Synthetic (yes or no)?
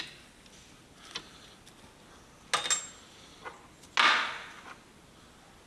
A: no